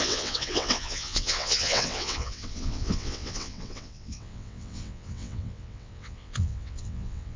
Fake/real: fake